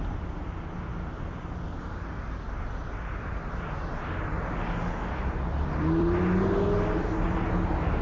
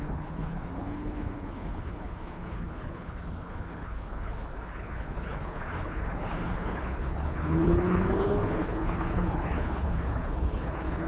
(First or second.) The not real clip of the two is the second